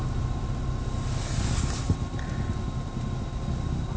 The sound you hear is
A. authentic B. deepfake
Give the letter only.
A